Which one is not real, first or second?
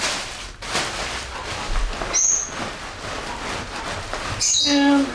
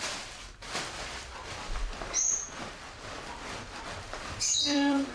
second